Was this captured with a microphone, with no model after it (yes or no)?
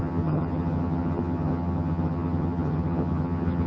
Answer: no